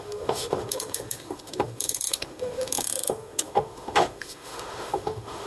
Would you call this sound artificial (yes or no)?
yes